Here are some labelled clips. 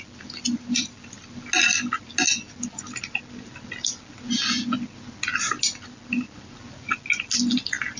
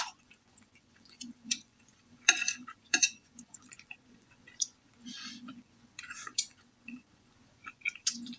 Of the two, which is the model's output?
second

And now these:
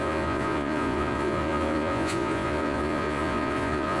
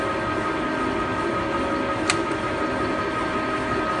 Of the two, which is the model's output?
first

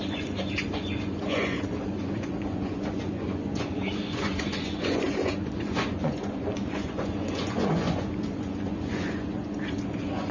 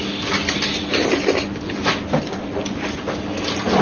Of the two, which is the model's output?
first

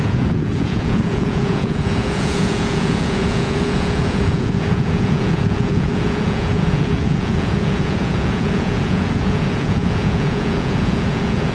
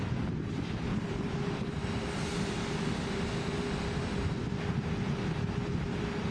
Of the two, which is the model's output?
first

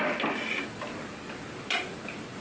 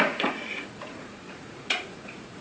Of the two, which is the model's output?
second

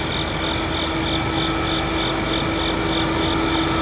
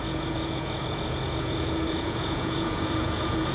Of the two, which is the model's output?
second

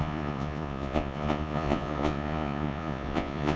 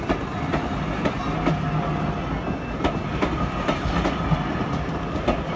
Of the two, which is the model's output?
first